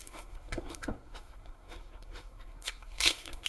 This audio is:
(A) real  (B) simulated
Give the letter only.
B